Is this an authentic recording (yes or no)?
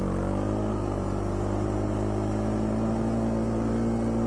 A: yes